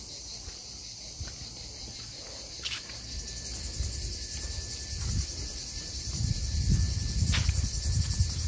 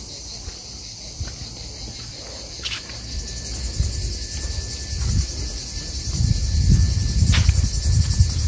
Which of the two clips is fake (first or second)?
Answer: first